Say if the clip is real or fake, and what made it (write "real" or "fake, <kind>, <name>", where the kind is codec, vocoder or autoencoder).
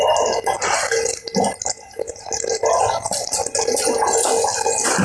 real